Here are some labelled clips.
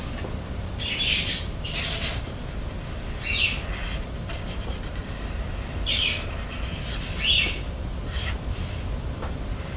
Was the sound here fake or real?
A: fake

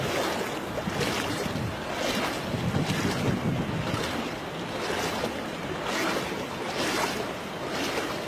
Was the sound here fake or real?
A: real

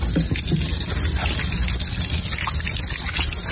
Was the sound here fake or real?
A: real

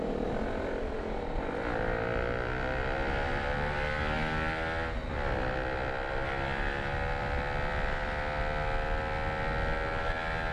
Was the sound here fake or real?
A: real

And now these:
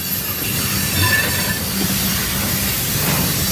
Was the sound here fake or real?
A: fake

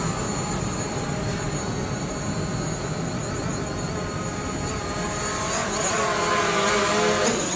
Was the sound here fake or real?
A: real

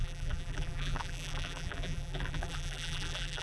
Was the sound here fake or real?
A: fake